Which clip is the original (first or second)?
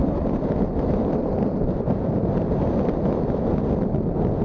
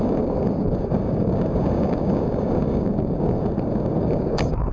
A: first